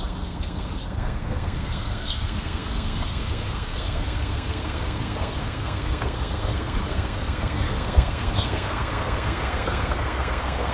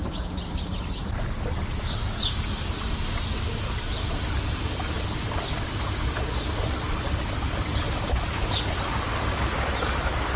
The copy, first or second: first